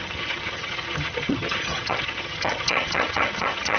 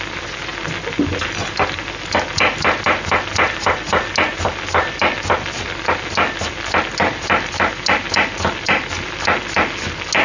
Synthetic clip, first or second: first